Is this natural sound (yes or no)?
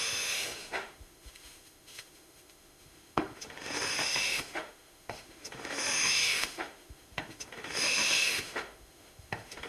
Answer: no